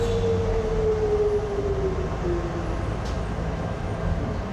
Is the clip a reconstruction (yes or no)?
no